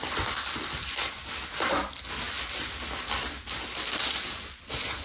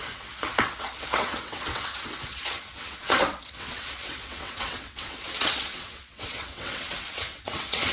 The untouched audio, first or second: first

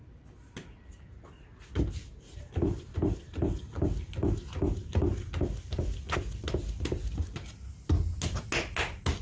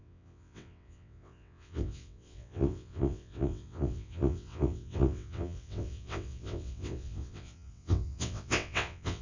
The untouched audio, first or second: first